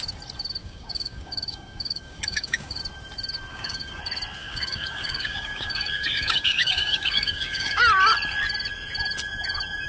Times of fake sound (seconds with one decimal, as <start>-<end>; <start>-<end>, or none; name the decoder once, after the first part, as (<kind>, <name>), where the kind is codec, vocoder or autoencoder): 0.6-2.8 (codec, DAC); 3.5-4.0; 4.4-7.8